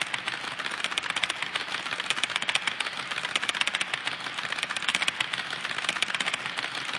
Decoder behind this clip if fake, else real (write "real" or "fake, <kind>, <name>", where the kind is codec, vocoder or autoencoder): real